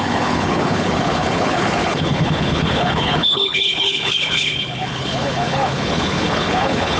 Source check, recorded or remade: remade